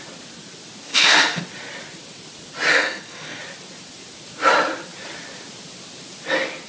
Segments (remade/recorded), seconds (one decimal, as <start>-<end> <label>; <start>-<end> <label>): 0.0-0.9 recorded; 0.9-1.4 remade; 1.4-2.7 recorded; 2.7-3.4 remade; 3.4-6.7 recorded